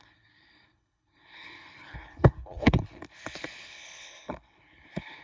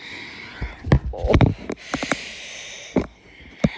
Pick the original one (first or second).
second